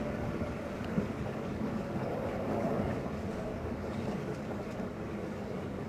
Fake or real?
fake